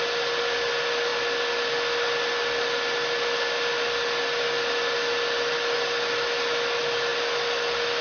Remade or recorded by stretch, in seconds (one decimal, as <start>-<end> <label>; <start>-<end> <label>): 0.0-8.0 recorded